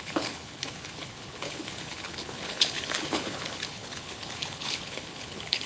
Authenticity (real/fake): fake